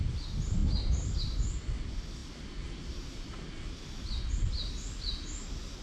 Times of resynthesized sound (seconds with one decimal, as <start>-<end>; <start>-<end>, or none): none